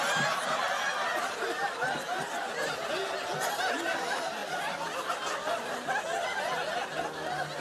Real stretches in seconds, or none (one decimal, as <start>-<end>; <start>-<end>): 0.0-7.6